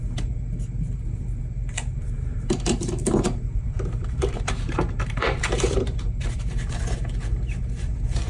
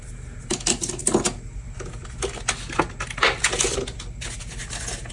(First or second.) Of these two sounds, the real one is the second